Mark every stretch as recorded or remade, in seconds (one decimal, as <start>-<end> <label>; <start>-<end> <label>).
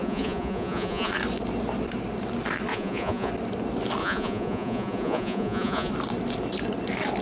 0.0-1.1 remade; 1.1-2.7 recorded; 2.7-3.3 remade; 3.3-4.0 recorded; 4.0-5.9 remade; 5.9-7.2 recorded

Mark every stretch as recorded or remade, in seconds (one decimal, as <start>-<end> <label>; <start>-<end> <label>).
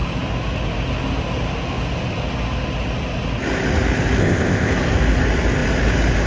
0.0-4.2 recorded; 4.2-4.7 remade; 4.7-6.3 recorded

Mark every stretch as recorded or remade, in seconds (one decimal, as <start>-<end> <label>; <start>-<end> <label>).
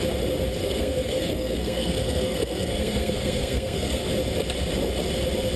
0.0-0.6 recorded; 0.6-4.0 remade; 4.0-5.6 recorded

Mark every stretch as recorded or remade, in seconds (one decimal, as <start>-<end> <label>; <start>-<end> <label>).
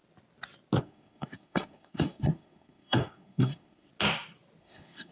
0.0-0.8 recorded; 0.8-3.9 remade; 3.9-4.6 recorded; 4.6-5.1 remade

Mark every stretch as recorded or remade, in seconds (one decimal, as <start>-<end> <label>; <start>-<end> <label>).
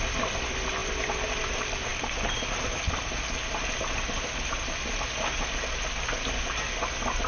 0.0-7.3 recorded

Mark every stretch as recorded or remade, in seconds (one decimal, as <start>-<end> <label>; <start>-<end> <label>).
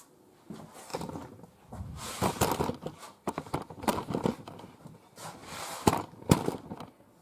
0.0-0.9 recorded; 0.9-2.6 remade; 2.6-5.4 recorded; 5.4-6.8 remade; 6.8-7.2 recorded